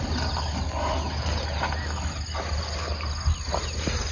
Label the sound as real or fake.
real